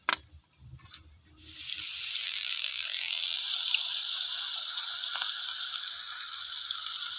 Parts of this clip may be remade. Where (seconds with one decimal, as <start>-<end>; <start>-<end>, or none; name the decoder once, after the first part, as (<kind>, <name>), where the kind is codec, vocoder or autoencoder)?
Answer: 2.2-3.4 (vocoder, BigVGAN v2)